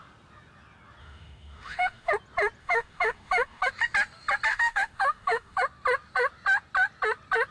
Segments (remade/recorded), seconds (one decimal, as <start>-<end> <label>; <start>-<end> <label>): 0.0-1.0 recorded; 1.0-2.1 remade; 2.1-2.6 recorded; 2.6-3.7 remade; 3.7-4.5 recorded; 4.5-5.6 remade; 5.6-7.5 recorded